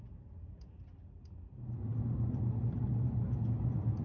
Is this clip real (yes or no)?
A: yes